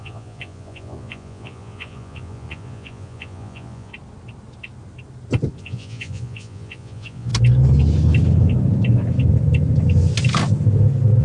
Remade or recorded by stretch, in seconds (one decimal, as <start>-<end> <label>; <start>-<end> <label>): 0.0-3.9 remade; 3.9-5.6 recorded; 5.6-7.3 remade; 7.3-11.2 recorded

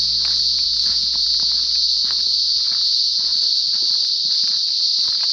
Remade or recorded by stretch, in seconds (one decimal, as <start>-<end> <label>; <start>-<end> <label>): 0.0-3.3 remade; 3.3-5.3 recorded